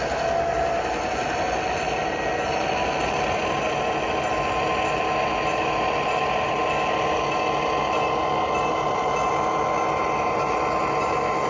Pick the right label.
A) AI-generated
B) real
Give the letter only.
B